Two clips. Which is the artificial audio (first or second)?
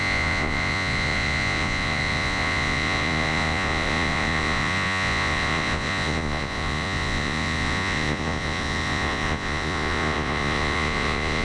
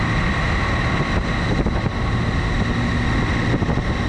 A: first